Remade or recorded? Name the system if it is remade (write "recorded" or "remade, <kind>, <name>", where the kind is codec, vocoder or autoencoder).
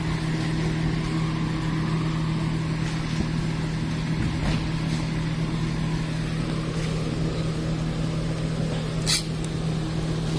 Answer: recorded